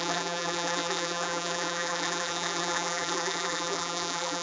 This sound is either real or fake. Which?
fake